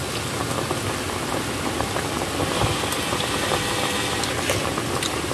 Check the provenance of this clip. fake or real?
real